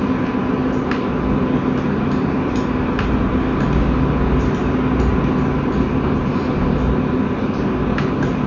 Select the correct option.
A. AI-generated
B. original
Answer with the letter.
B